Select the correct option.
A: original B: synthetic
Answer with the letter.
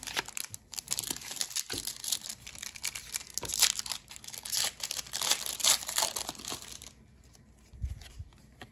A